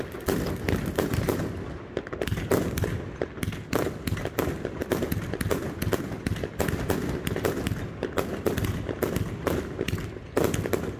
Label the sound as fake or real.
real